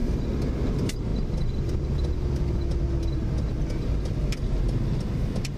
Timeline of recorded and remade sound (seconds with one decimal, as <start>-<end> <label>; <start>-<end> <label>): 0.0-0.6 recorded; 0.6-1.1 remade; 1.1-4.4 recorded; 4.4-5.6 remade

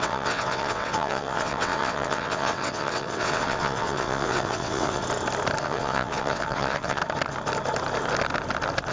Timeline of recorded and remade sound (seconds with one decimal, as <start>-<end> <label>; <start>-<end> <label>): 0.0-5.0 remade; 5.0-5.6 recorded; 5.6-7.0 remade; 7.0-8.9 recorded

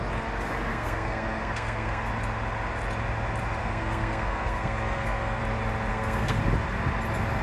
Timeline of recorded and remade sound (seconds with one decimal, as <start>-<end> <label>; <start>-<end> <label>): 0.0-0.7 recorded; 0.7-2.1 remade; 2.1-3.6 recorded; 3.6-5.4 remade; 5.4-5.9 recorded; 5.9-6.4 remade; 6.4-7.4 recorded

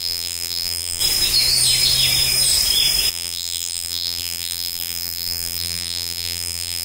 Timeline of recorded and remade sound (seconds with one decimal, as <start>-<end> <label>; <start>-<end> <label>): 0.0-1.0 remade; 1.0-3.1 recorded; 3.1-6.8 remade

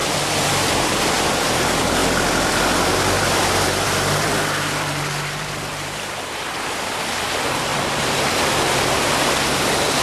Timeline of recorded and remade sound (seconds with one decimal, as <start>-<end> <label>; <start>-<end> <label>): 0.0-1.1 remade; 1.1-2.0 recorded; 2.0-6.5 remade; 6.5-7.7 recorded; 7.7-8.9 remade; 8.9-10.0 recorded